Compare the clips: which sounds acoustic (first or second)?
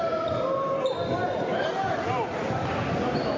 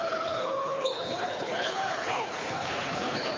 first